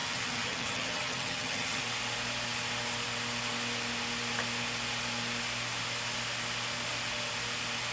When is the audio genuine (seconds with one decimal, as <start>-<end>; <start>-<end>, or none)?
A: 1.8-7.9